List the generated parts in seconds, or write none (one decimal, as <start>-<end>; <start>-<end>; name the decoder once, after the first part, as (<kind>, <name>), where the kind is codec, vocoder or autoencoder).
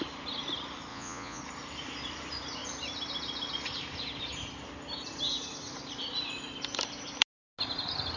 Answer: 0.9-1.4 (vocoder, Vocos)